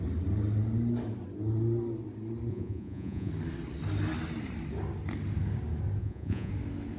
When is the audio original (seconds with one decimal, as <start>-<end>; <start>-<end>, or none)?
0.0-2.5; 3.3-6.0; 6.5-7.0